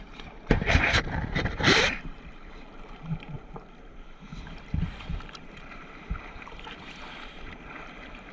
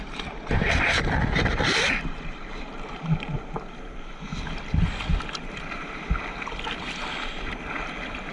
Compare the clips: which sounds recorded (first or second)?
second